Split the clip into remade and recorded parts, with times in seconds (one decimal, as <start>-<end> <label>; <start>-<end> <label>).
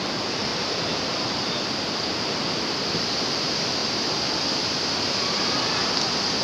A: 0.0-0.5 recorded; 0.5-1.5 remade; 1.5-6.4 recorded